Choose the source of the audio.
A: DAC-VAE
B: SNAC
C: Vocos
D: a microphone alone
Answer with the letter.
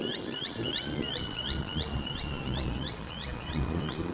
C